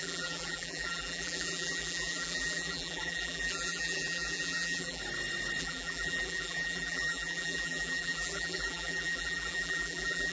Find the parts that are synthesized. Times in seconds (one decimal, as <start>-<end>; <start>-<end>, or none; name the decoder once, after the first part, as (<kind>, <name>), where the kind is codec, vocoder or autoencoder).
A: 0.0-5.0 (vocoder, BigVGAN v2); 5.6-10.3